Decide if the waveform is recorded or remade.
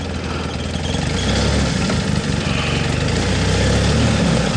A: recorded